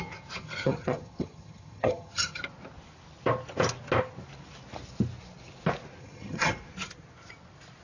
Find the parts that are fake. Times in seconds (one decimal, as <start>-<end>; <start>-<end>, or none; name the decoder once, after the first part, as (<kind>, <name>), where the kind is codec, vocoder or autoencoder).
0.4-2.4 (vocoder, HiFi-GAN); 6.0-6.5